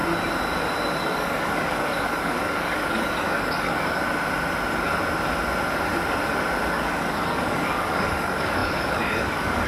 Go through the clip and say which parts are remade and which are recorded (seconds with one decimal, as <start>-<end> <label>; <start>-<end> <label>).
0.0-1.0 recorded; 1.0-4.0 remade; 4.0-6.7 recorded; 6.7-9.7 remade